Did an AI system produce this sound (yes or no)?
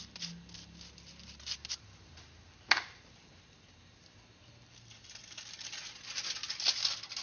yes